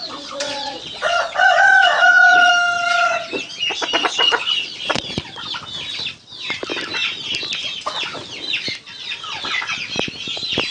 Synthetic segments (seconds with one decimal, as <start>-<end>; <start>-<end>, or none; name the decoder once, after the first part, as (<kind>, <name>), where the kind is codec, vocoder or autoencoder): 0.0-2.5 (vocoder, Vocos); 4.0-5.2